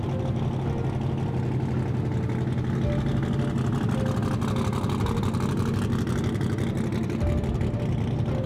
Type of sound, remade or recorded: recorded